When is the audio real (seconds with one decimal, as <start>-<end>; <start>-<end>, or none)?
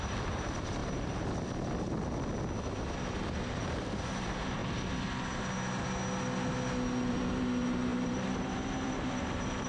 0.8-3.2; 4.6-7.1